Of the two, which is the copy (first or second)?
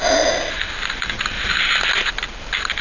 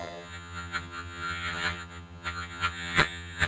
second